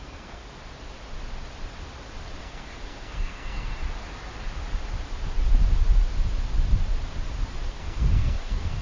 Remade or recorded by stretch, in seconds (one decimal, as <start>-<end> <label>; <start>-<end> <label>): 0.0-0.4 remade; 0.4-2.4 recorded; 2.4-3.7 remade; 3.7-7.7 recorded; 7.7-8.8 remade